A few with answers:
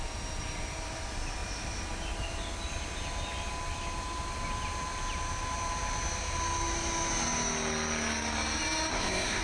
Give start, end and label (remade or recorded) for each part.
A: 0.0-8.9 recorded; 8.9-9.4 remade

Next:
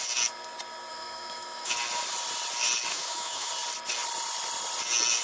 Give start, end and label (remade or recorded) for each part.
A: 0.0-0.9 recorded; 0.9-1.7 remade; 1.7-2.9 recorded; 2.9-3.5 remade; 3.5-5.2 recorded

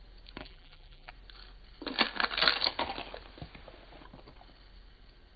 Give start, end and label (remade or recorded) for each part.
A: 0.0-0.4 recorded; 0.4-1.1 remade; 1.1-5.4 recorded